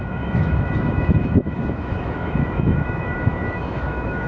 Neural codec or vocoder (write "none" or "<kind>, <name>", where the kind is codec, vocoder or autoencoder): autoencoder, DAC-VAE